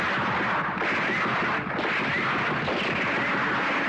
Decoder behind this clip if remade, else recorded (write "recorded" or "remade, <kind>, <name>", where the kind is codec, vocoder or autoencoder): recorded